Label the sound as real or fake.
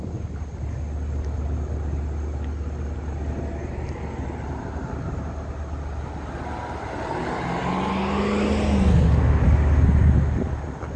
real